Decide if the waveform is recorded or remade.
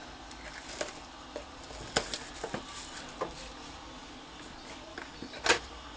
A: recorded